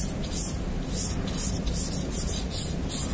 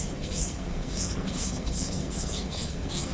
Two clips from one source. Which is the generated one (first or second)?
second